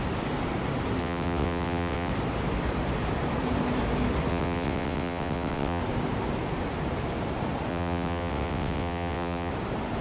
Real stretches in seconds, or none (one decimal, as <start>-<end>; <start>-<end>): 0.0-1.0; 2.1-4.3; 5.8-7.7; 9.5-10.0